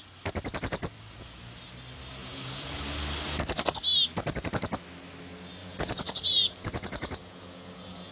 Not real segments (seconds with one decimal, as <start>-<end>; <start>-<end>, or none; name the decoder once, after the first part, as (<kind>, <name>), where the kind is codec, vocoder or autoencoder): 2.2-2.7 (vocoder, Vocos); 5.6-8.1